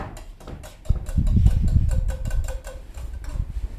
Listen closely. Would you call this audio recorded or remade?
recorded